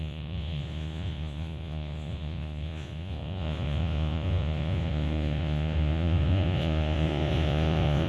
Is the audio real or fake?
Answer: fake